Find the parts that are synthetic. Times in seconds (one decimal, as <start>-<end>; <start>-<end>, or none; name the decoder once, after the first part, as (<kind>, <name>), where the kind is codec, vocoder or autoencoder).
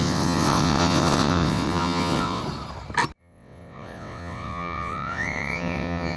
0.0-2.4 (vocoder, WaveNeXt); 3.2-6.2